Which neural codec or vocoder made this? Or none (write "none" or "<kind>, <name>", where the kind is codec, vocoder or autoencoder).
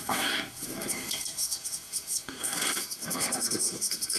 codec, SNAC